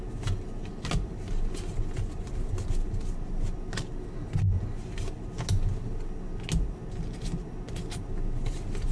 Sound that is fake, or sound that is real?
real